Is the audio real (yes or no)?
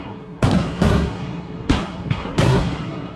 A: no